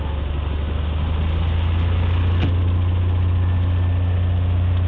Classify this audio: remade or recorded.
recorded